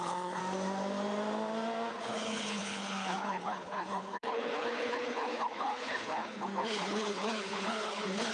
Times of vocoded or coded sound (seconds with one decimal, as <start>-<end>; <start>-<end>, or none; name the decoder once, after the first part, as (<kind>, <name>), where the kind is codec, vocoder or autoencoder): 0.0-0.4 (codec, HILCodec); 1.9-8.3